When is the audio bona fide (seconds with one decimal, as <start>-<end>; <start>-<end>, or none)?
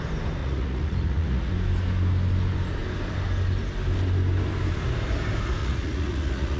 0.0-0.4; 1.5-5.6